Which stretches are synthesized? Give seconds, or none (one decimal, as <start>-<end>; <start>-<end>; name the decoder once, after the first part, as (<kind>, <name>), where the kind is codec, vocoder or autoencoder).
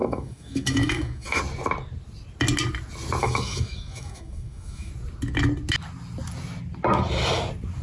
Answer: 0.0-1.4 (autoencoder, DAC-VAE); 3.2-4.9